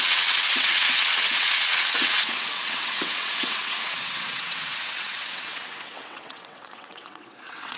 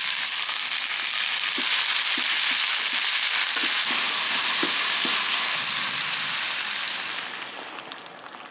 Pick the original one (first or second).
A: second